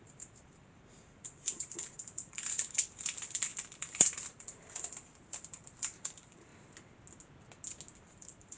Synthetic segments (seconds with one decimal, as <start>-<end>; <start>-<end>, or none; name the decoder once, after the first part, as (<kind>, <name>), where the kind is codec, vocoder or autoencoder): 0.0-6.5 (vocoder, BigVGAN v2); 8.1-8.6